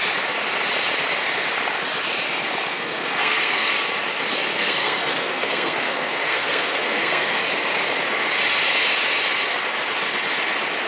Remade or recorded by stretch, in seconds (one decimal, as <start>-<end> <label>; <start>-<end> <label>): 0.0-2.7 recorded; 2.7-3.7 remade; 3.7-4.5 recorded; 4.5-7.4 remade; 7.4-10.9 recorded